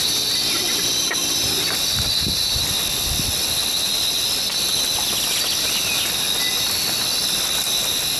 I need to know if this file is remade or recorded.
recorded